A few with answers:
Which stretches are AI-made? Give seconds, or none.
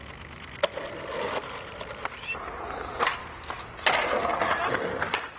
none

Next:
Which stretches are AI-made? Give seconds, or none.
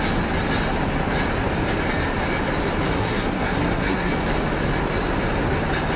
2.9-4.1 (codec, SNAC)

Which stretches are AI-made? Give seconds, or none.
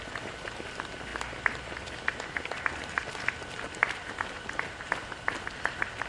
none